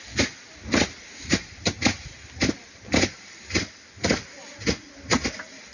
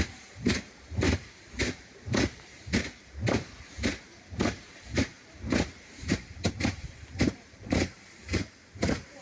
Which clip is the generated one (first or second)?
second